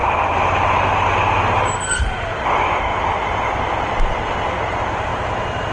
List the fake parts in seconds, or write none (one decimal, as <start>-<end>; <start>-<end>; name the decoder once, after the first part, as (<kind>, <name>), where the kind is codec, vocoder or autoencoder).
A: 2.9-4.6 (vocoder, BigVGAN v2)